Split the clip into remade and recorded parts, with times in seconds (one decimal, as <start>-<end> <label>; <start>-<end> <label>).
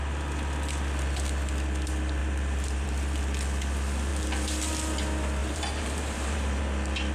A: 0.0-2.2 recorded; 2.2-3.2 remade; 3.2-4.1 recorded; 4.1-4.7 remade; 4.7-5.4 recorded; 5.4-6.6 remade; 6.6-7.1 recorded